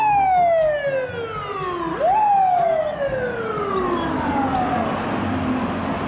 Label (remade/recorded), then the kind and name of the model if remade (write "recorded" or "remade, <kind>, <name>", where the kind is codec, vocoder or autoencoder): recorded